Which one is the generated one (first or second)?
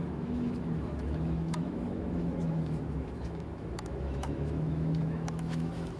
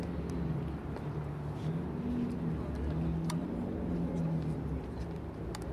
first